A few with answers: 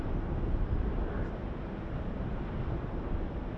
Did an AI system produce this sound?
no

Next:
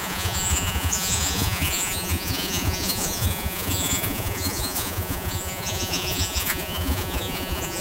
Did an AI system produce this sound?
yes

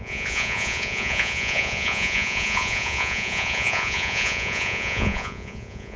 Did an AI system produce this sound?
yes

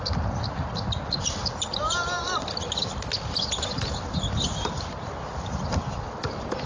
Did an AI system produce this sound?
no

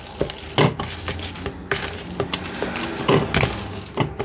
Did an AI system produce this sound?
no